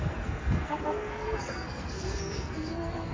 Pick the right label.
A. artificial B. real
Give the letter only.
A